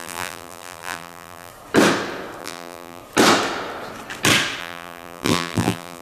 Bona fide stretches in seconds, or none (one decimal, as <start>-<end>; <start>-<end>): 1.5-2.4; 3.0-4.6